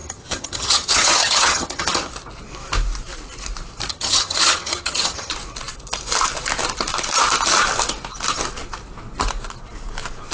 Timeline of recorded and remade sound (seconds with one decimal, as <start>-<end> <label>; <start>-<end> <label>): 0.0-2.1 remade; 2.1-3.9 recorded; 3.9-5.3 remade; 5.3-10.3 recorded